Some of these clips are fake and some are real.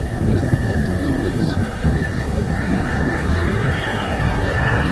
fake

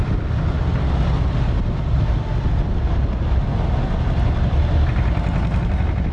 real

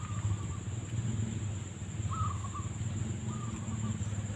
real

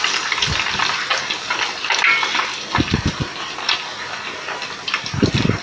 real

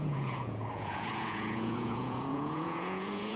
fake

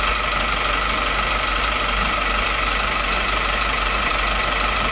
real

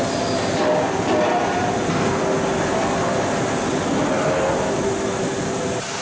real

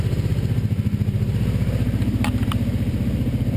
fake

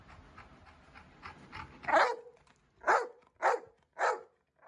real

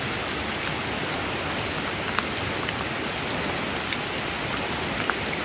real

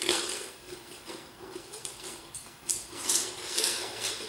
fake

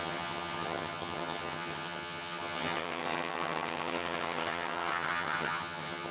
fake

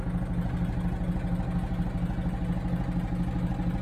real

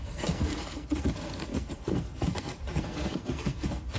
fake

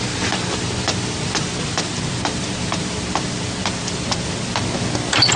real